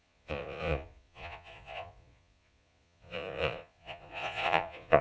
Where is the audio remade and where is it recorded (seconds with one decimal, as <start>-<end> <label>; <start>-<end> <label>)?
0.0-5.0 remade